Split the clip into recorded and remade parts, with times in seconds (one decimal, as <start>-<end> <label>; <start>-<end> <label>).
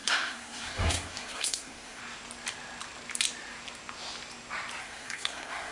0.0-2.0 remade; 2.0-4.8 recorded; 4.8-5.7 remade